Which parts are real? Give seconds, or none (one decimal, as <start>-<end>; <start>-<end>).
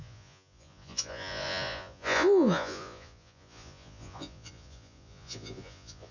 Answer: none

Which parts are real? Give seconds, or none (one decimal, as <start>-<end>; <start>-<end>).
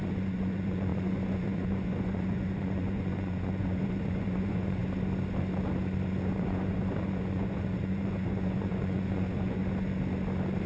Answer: 4.8-6.3; 9.6-10.7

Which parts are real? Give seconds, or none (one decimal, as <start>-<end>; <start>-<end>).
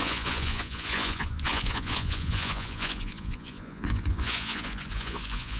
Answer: none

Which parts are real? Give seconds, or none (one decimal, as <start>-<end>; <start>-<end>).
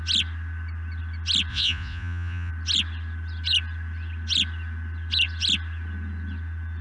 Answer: 0.0-1.5; 2.5-6.8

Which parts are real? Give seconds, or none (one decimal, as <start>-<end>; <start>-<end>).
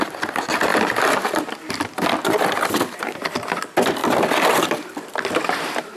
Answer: 0.0-6.0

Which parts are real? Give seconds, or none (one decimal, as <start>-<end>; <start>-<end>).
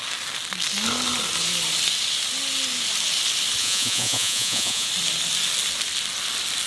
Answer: 0.0-3.6; 4.9-6.7